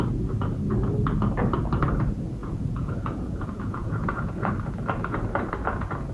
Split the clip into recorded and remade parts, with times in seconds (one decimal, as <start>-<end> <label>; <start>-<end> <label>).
0.0-2.4 recorded; 2.4-4.5 remade; 4.5-6.1 recorded